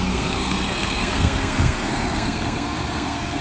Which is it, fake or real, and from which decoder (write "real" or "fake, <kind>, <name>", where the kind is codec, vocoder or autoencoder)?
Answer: fake, codec, SNAC